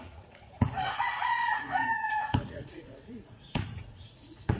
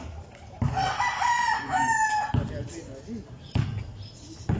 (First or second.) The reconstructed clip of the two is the first